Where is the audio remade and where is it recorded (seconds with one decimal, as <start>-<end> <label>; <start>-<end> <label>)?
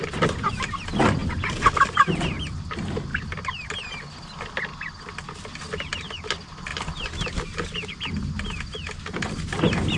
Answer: 0.0-10.0 recorded